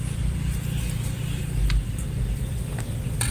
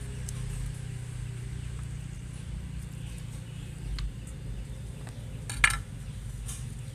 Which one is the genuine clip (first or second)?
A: second